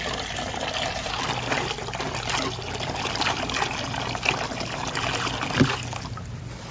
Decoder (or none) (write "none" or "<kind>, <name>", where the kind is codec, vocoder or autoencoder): none